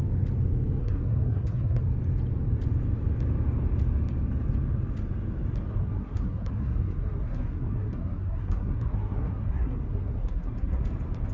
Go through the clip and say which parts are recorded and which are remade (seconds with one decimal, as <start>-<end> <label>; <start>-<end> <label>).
0.0-0.8 recorded; 0.8-1.8 remade; 1.8-5.8 recorded; 5.8-10.8 remade; 10.8-11.3 recorded